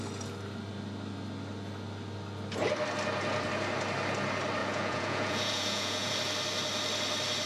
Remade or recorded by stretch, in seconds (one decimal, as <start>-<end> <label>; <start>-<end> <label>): 0.0-4.6 recorded; 4.6-6.1 remade; 6.1-7.5 recorded